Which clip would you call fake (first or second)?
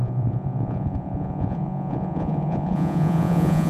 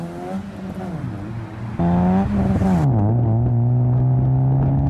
first